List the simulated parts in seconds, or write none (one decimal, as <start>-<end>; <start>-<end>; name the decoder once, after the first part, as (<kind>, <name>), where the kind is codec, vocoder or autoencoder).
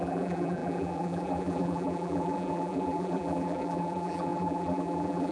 0.0-5.3 (vocoder, BigVGAN v2)